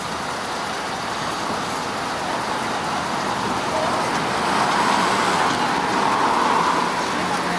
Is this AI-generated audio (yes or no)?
no